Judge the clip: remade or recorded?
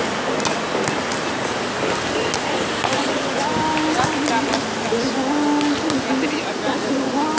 recorded